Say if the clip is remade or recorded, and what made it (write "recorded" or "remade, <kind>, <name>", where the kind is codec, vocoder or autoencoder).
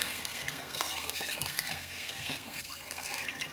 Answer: remade, codec, SNAC